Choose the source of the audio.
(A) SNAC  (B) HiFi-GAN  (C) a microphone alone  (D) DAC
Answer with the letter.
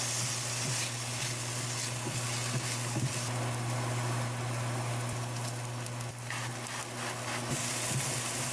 C